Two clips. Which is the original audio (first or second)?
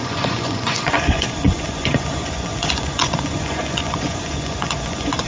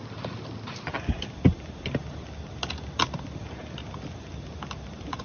second